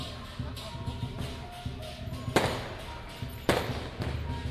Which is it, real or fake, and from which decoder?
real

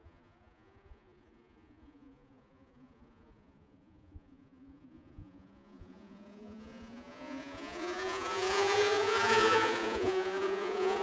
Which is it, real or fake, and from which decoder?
fake, vocoder, Vocos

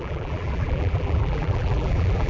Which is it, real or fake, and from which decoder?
fake, vocoder, BigVGAN v2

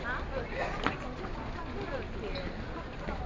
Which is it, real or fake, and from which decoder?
real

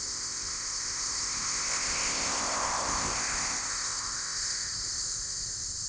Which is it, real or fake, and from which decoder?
fake, codec, ZipCodec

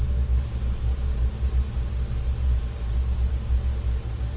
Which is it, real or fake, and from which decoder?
real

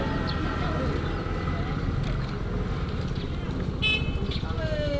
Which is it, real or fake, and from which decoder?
real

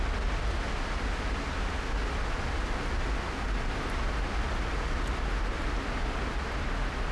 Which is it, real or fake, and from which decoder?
real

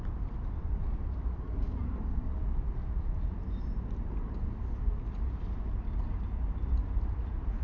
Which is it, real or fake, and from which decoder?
real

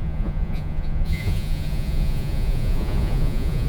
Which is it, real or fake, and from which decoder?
fake, vocoder, Vocos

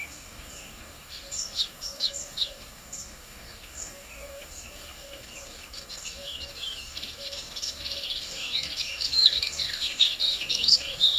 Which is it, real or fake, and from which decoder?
fake, codec, DAC